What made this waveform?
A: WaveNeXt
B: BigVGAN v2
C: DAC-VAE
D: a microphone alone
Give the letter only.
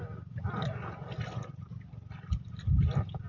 D